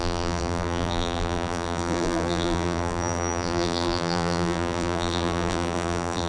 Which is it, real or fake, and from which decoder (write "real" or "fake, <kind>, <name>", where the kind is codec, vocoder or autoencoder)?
fake, vocoder, BigVGAN v2